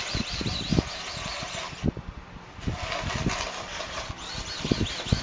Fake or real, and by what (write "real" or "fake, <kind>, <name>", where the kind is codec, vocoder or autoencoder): real